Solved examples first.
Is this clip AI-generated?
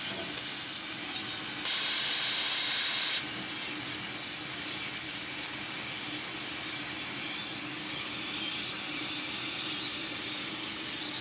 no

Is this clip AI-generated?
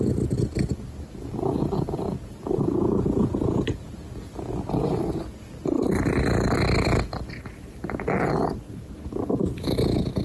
no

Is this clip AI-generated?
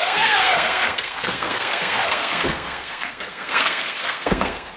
yes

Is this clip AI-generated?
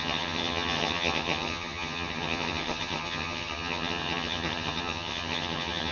yes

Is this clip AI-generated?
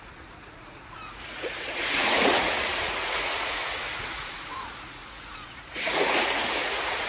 yes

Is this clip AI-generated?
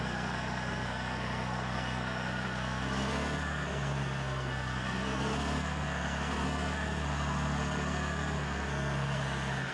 yes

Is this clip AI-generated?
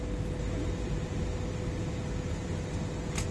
no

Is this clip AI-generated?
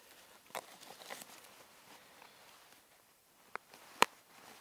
yes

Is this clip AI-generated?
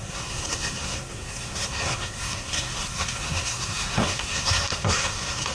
yes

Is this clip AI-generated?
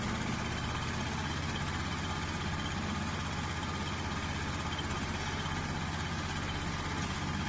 no